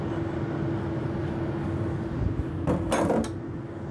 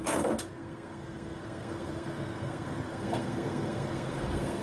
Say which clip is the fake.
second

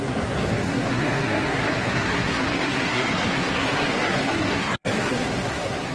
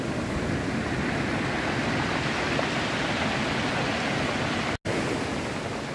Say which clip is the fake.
first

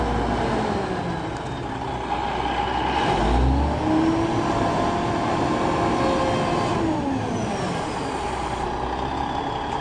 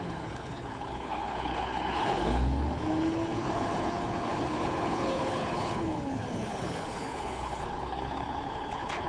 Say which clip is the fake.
second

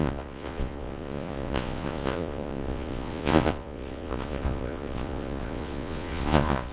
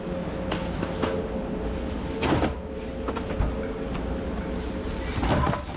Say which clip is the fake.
first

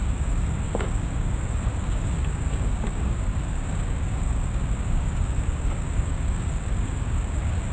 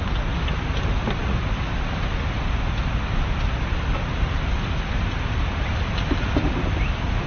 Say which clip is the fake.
first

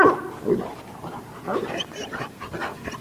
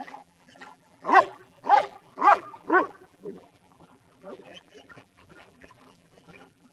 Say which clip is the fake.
second